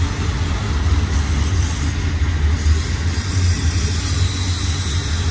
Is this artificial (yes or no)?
no